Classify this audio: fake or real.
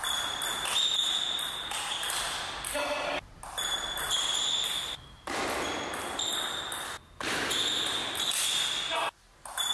real